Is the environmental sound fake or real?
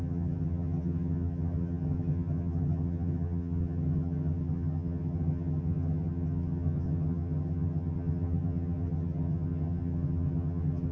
fake